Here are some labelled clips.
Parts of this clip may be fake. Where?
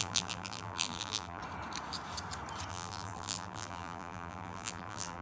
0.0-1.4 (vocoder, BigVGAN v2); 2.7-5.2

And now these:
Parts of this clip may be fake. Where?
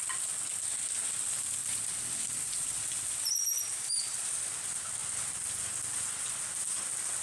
1.6-2.8 (vocoder, BigVGAN v2); 3.7-4.4